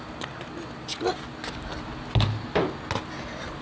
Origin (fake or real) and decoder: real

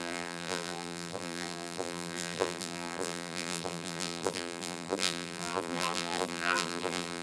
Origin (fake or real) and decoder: fake, vocoder, BigVGAN v2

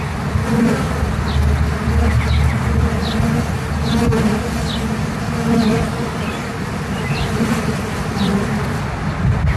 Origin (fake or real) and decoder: real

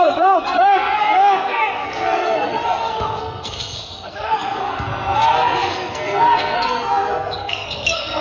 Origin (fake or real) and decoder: fake, codec, SNAC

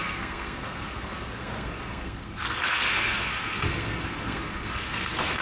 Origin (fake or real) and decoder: fake, codec, SNAC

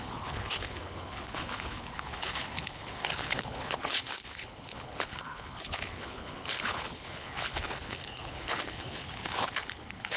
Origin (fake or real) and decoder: fake, codec, HILCodec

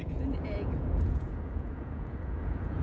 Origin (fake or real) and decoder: fake, vocoder, Vocos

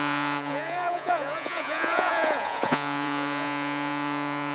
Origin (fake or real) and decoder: fake, vocoder, Vocos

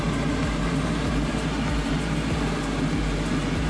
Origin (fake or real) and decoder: real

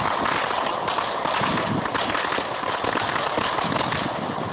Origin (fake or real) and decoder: real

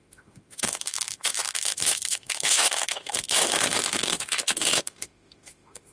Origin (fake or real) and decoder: fake, autoencoder, DAC-VAE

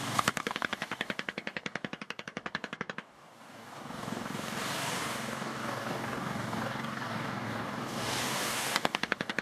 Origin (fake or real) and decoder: fake, codec, DAC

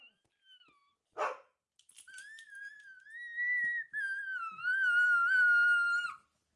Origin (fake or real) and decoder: real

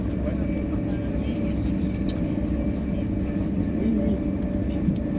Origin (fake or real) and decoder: real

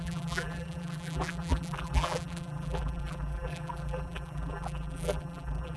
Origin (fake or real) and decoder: fake, vocoder, BigVGAN v2